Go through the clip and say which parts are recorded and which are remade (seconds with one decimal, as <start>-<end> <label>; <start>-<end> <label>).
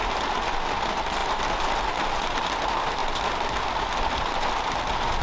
0.0-5.2 recorded